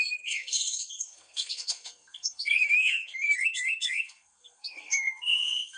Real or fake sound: fake